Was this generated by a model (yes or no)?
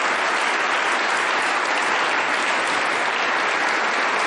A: no